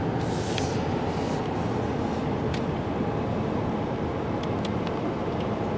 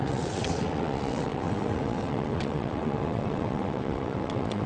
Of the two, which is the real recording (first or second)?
first